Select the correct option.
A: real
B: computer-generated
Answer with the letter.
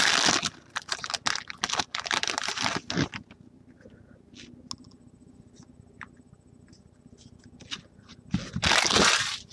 A